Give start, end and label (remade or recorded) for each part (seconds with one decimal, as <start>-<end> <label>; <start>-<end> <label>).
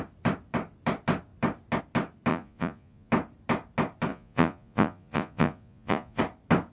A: 0.0-2.3 recorded; 2.3-3.1 remade; 3.1-4.1 recorded; 4.1-6.2 remade; 6.2-6.7 recorded